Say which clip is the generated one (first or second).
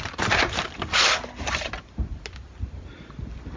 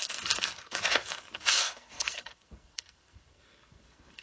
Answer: second